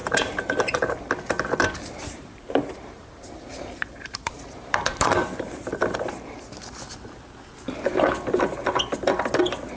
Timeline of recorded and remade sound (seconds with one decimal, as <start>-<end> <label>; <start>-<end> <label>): 0.0-0.8 remade; 0.8-2.0 recorded; 2.0-5.7 remade; 5.7-9.8 recorded